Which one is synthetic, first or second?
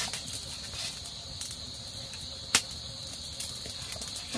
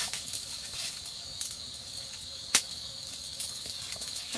second